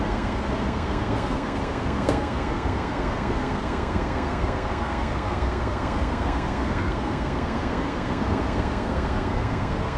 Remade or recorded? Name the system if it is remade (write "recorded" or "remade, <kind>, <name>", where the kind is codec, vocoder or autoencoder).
remade, codec, SNAC